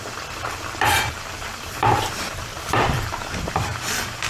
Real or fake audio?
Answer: fake